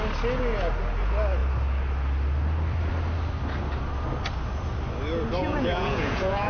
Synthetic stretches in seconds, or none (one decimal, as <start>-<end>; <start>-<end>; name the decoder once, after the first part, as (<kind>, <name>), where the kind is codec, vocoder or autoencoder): 5.4-6.5 (vocoder, Vocos)